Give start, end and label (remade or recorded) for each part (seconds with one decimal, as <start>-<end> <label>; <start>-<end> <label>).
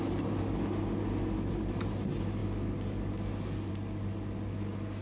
0.0-5.0 recorded